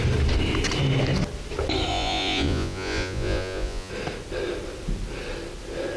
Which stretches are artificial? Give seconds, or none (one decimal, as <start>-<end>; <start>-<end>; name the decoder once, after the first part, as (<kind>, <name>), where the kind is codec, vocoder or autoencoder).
1.9-3.9 (vocoder, Vocos)